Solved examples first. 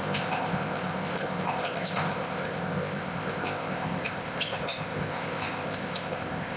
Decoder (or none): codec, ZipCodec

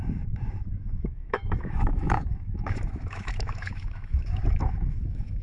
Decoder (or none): autoencoder, DAC-VAE